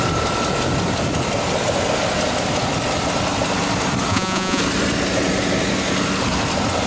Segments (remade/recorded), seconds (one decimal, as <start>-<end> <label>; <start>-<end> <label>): 0.0-4.1 recorded; 4.1-4.6 remade; 4.6-6.9 recorded